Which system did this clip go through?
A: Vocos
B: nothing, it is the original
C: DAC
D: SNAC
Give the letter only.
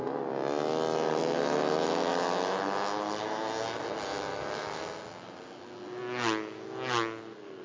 B